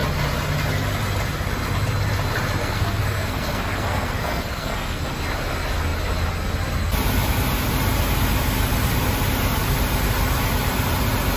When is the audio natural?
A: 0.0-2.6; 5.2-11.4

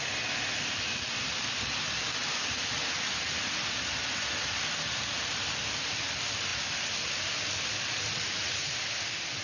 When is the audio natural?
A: 0.0-9.4

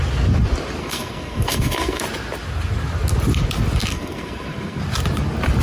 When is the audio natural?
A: 0.0-0.8; 2.0-3.9; 4.8-5.6